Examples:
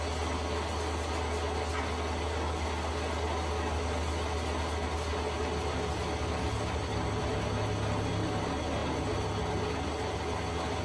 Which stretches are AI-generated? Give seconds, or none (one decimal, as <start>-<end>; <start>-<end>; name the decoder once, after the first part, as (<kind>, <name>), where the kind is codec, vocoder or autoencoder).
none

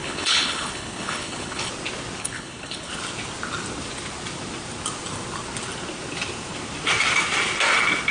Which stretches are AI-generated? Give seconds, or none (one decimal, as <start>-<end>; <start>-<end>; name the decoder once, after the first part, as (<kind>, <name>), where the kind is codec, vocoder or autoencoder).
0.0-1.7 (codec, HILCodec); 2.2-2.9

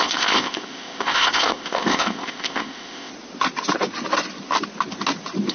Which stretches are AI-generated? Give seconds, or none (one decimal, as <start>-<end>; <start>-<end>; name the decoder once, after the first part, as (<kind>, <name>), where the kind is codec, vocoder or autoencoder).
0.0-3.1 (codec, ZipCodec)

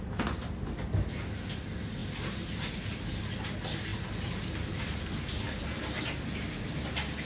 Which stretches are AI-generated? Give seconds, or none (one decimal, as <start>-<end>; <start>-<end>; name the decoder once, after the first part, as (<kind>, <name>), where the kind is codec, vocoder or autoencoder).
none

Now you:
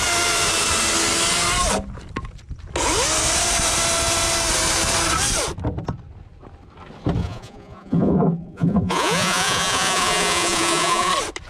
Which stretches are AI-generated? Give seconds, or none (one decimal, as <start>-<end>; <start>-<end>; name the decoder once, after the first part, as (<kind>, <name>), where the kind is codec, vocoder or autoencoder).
7.2-11.1 (vocoder, Vocos)

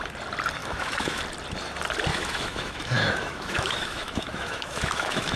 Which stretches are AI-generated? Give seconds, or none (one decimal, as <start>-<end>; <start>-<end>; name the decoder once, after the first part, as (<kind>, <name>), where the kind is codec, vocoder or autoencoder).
0.6-1.2 (autoencoder, DAC-VAE); 2.1-5.4

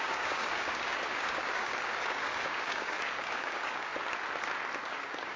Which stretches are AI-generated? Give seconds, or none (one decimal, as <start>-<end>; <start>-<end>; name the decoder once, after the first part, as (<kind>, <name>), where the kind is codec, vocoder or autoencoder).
0.0-3.9 (codec, DAC); 4.9-5.4

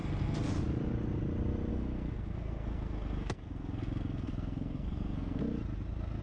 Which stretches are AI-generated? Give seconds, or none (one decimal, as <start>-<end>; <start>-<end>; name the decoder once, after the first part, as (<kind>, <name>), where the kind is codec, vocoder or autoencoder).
1.7-5.4 (codec, SNAC)